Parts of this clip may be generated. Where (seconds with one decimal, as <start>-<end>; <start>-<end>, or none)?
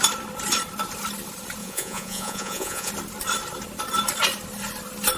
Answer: 1.6-2.9